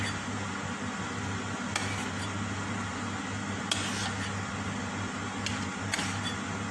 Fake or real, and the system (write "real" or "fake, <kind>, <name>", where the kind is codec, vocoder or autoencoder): real